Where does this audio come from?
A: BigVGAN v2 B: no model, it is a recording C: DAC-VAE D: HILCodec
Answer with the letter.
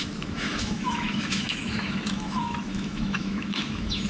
C